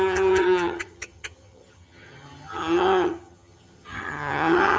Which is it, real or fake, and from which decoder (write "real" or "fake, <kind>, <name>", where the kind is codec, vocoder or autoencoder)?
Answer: fake, vocoder, HiFi-GAN